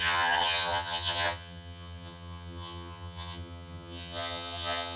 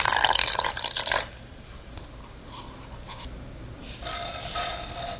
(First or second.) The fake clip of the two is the first